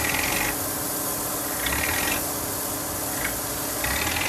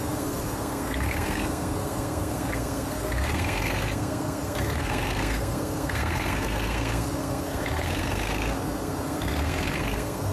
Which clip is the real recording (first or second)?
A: first